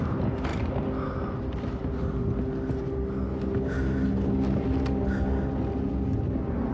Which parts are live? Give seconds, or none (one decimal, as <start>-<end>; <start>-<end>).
0.0-6.7